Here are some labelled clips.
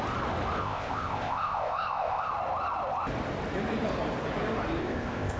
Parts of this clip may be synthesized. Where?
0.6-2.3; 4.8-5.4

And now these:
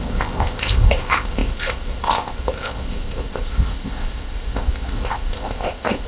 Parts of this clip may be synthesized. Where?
0.0-6.1

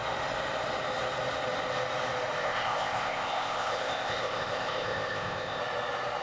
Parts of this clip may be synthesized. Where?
2.4-5.6

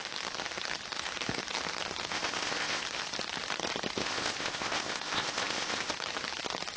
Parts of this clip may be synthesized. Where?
2.1-2.8; 4.0-5.9

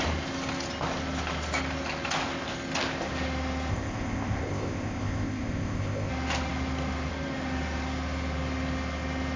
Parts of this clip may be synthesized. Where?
3.7-6.1

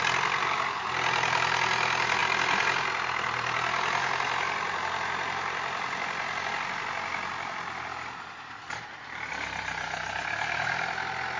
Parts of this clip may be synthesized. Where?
none

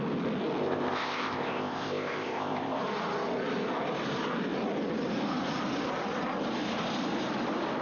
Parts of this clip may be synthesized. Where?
0.6-2.8

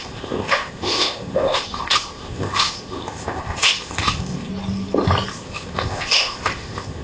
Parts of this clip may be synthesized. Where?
0.0-4.5; 5.3-7.0